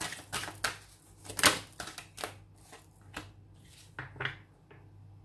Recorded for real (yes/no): yes